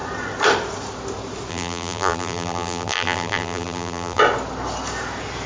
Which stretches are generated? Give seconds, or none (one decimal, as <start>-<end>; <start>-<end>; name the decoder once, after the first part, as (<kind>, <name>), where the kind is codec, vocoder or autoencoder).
1.5-4.2 (vocoder, BigVGAN v2)